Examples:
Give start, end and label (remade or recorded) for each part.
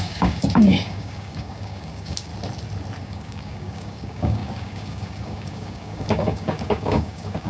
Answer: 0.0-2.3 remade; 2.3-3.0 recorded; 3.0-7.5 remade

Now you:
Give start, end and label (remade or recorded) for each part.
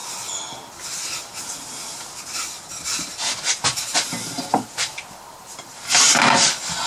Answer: 0.0-6.9 recorded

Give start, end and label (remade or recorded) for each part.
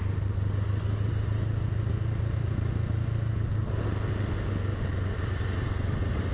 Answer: 0.0-6.3 recorded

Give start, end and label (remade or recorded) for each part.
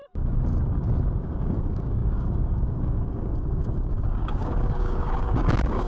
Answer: 0.0-1.2 recorded; 1.2-5.9 remade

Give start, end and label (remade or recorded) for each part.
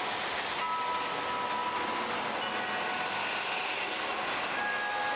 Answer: 0.0-5.2 recorded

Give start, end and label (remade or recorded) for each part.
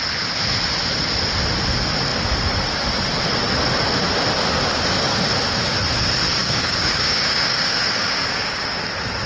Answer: 0.0-6.4 recorded; 6.4-8.8 remade; 8.8-9.3 recorded